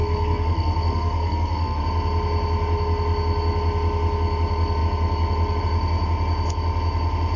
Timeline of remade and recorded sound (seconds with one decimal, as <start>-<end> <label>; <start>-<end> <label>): 0.0-1.8 remade; 1.8-7.4 recorded